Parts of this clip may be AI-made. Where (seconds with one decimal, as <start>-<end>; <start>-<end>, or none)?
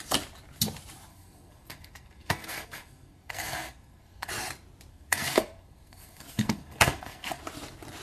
1.1-4.3; 4.9-7.4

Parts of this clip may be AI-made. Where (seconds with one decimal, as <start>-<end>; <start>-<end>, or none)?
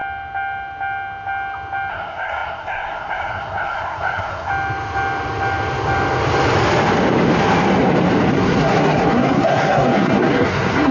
1.9-4.5; 8.3-10.9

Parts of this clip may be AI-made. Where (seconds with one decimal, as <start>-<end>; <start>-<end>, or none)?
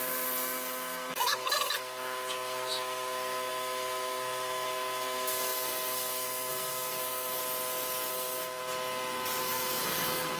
0.0-7.4; 8.1-8.6; 9.4-10.4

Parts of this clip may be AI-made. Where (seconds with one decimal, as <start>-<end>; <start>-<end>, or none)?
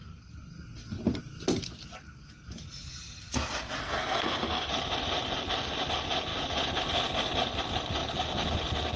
3.8-4.7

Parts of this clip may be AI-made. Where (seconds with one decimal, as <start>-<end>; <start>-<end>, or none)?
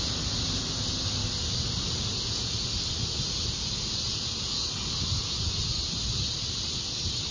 none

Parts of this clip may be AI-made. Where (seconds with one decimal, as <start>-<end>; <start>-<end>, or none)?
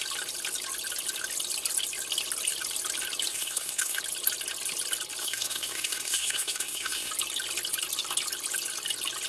3.3-4.0; 5.2-7.1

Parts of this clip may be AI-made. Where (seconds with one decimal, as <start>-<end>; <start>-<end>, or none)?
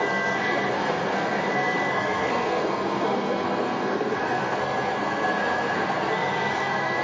0.0-7.0